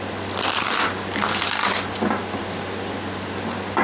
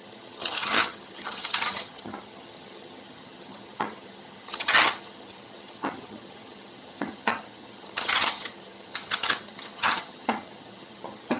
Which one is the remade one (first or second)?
second